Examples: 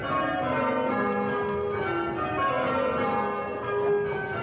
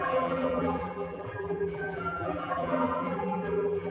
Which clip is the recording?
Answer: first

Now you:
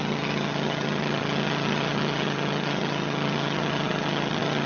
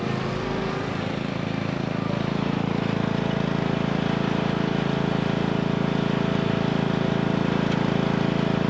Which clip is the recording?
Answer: second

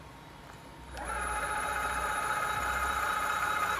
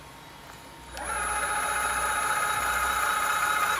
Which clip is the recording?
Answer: second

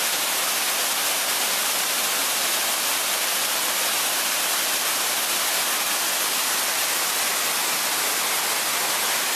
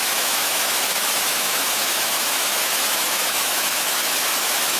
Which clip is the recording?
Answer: first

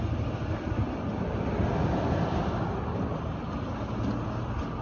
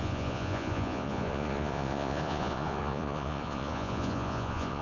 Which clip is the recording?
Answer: first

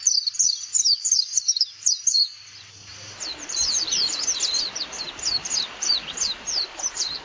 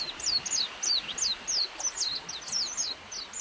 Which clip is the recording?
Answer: second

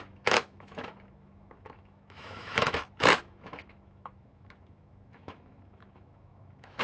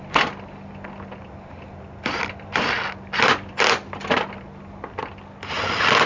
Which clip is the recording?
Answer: second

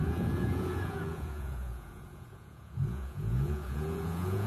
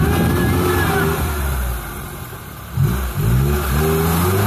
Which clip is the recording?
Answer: second